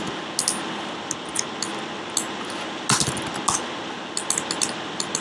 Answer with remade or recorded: recorded